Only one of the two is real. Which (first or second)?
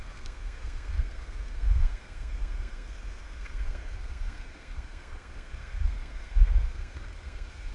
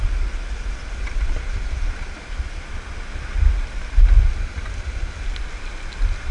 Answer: second